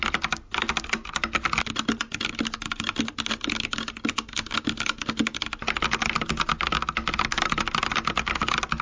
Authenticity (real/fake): real